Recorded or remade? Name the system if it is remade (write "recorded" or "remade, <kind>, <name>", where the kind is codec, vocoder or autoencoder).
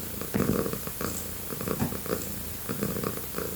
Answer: recorded